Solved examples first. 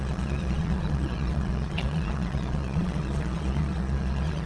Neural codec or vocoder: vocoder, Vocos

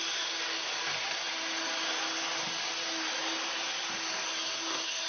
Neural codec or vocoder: none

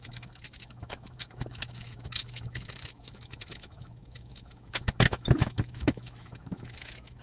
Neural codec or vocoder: autoencoder, DAC-VAE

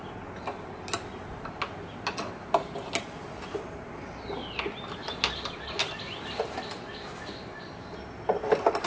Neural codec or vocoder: none